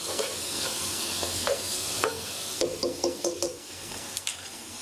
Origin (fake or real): fake